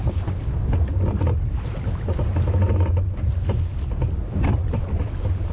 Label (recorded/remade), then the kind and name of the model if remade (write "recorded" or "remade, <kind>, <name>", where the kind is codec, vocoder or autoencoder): recorded